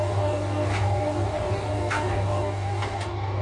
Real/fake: fake